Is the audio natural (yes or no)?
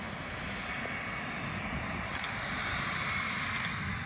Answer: yes